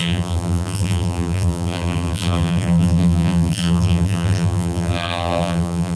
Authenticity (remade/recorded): remade